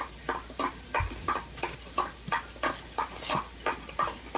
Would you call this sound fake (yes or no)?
no